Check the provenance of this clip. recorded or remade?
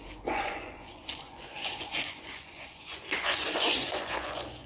remade